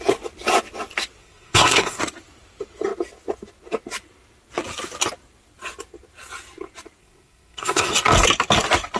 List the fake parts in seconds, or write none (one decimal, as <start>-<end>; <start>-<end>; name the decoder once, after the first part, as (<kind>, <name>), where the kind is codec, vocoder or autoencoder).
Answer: 1.2-2.0 (codec, SNAC); 7.0-7.9

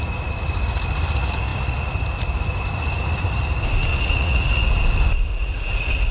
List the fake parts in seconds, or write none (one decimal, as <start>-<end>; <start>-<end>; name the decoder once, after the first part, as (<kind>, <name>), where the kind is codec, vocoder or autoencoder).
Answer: 3.9-4.6 (vocoder, Vocos); 5.3-6.1